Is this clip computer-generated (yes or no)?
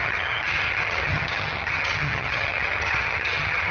yes